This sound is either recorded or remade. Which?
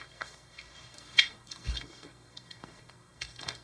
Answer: remade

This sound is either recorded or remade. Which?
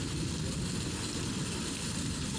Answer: recorded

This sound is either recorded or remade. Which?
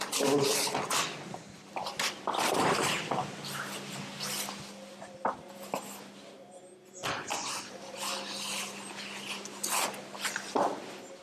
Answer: recorded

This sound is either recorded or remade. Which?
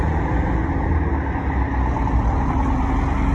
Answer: recorded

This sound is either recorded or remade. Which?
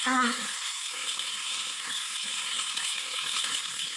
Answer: remade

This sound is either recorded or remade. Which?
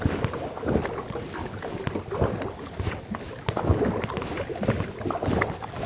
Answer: recorded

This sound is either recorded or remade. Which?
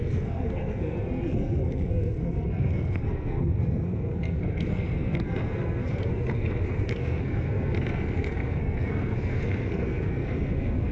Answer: remade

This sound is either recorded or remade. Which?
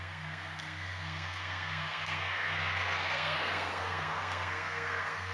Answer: remade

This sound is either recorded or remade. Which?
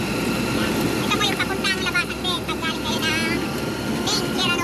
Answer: recorded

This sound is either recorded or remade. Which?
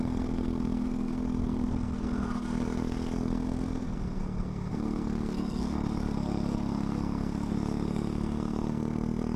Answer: remade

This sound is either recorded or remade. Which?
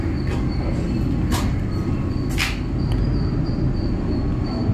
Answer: recorded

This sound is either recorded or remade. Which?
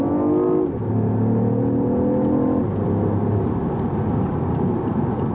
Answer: recorded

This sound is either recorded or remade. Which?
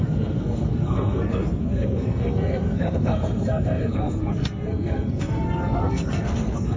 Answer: remade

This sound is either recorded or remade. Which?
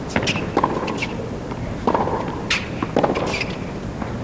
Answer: recorded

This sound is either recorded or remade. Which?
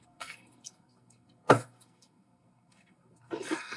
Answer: remade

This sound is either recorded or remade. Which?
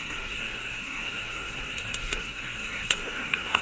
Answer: remade